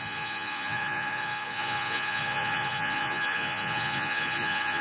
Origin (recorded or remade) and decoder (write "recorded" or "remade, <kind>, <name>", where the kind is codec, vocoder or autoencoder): remade, vocoder, Vocos